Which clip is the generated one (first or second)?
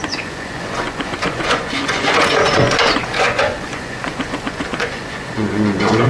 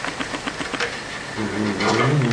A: first